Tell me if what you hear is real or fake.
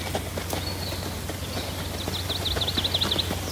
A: real